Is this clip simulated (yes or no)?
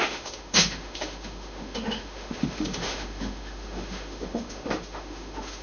yes